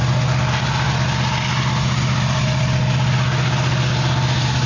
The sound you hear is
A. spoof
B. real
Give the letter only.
B